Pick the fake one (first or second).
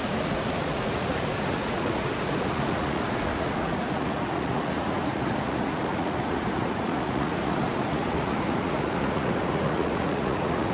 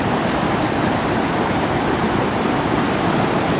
first